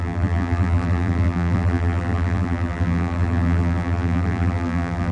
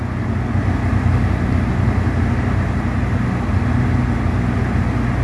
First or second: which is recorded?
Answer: second